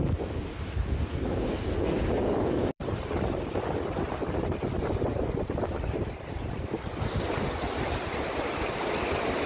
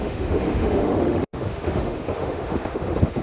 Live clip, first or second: first